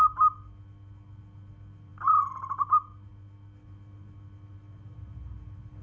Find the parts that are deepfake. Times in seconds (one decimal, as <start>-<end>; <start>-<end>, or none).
none